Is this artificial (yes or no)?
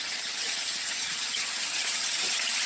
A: yes